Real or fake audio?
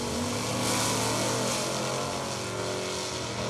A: real